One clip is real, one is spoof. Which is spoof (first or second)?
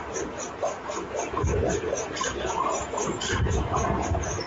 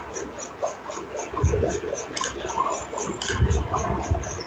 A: first